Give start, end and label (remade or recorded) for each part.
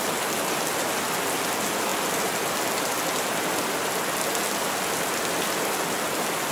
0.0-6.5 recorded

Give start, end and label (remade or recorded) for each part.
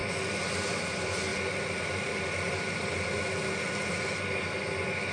0.0-5.1 recorded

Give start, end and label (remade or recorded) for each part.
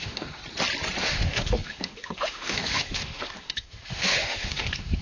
0.0-0.4 remade; 0.4-1.0 recorded; 1.0-5.0 remade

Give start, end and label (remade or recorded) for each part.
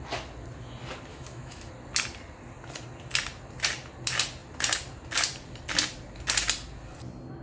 0.0-1.1 recorded; 1.1-1.7 remade; 1.7-7.4 recorded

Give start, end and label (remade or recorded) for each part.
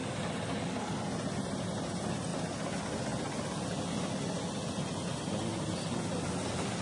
0.0-6.8 recorded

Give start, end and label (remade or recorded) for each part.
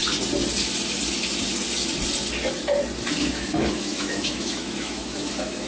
0.0-3.3 recorded; 3.3-5.7 remade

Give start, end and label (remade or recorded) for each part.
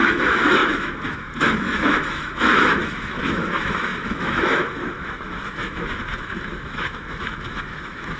0.0-8.2 remade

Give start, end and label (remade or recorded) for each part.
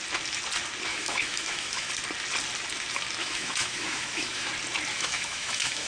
0.0-0.9 recorded; 0.9-1.9 remade; 1.9-3.2 recorded; 3.2-4.5 remade; 4.5-4.9 recorded; 4.9-5.9 remade